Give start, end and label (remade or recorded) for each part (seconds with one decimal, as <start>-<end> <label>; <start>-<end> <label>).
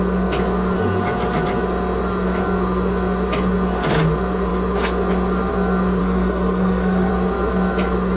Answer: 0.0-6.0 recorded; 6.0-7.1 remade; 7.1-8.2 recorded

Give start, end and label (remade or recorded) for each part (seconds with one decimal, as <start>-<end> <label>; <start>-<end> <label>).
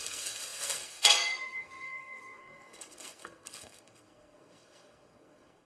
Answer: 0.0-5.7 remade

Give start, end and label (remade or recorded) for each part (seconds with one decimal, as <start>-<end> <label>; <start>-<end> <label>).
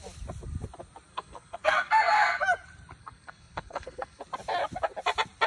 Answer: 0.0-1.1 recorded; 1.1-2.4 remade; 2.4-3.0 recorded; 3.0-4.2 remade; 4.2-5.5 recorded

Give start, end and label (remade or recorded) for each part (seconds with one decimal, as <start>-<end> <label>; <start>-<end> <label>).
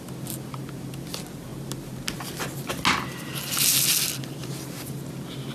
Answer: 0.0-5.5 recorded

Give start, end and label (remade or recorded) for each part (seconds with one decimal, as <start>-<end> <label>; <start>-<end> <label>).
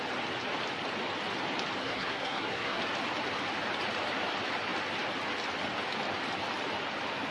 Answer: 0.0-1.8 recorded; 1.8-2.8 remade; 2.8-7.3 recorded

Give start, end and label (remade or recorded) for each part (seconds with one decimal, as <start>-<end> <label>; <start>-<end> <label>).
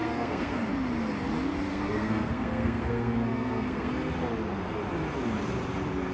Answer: 0.0-0.7 remade; 0.7-1.7 recorded; 1.7-3.9 remade; 3.9-6.1 recorded